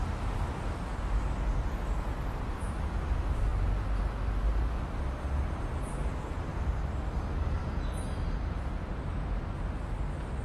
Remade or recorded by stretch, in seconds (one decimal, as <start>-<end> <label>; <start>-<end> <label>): 0.0-6.5 recorded; 6.5-7.2 remade; 7.2-10.4 recorded